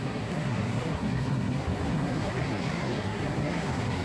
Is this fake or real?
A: fake